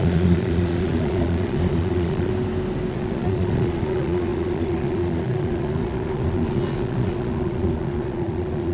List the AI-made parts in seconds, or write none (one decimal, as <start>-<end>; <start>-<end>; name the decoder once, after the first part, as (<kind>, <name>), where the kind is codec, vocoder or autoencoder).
0.0-2.3 (vocoder, Vocos); 2.9-8.7